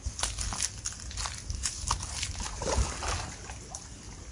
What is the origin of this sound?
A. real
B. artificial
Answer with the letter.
A